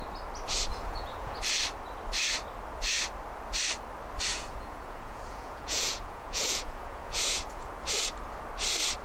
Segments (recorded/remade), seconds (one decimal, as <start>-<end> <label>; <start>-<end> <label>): 0.0-0.7 recorded; 0.7-1.4 remade; 1.4-4.3 recorded; 4.3-7.7 remade; 7.7-9.0 recorded

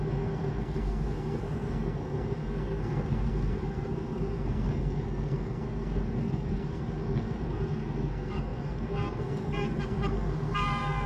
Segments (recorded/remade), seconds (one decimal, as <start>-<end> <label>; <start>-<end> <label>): 0.0-11.1 remade

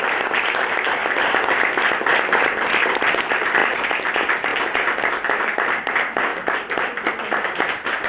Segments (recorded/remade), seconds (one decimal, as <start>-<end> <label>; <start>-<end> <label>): 0.0-4.5 remade; 4.5-5.1 recorded; 5.1-6.3 remade; 6.3-7.1 recorded; 7.1-8.1 remade

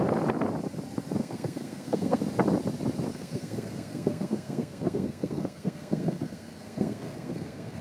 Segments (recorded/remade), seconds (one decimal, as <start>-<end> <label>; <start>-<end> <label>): 0.0-1.2 recorded; 1.2-2.2 remade; 2.2-3.1 recorded; 3.1-7.8 remade

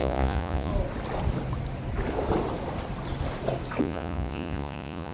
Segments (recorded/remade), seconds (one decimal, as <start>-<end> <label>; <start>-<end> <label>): 0.0-0.7 remade; 0.7-3.8 recorded; 3.8-5.1 remade

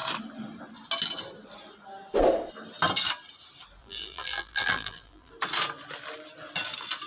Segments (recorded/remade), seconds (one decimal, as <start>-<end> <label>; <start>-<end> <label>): 0.0-3.8 recorded; 3.8-5.3 remade; 5.3-7.1 recorded

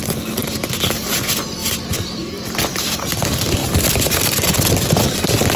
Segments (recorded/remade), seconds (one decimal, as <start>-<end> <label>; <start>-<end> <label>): 0.0-5.6 recorded